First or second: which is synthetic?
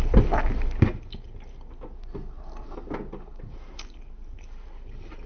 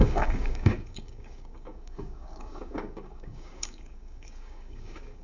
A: second